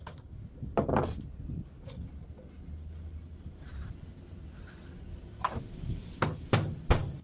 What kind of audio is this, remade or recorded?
recorded